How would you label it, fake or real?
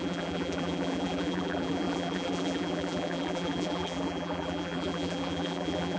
fake